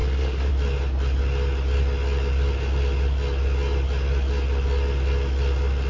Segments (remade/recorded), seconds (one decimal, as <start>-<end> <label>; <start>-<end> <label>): 0.0-0.5 remade; 0.5-5.9 recorded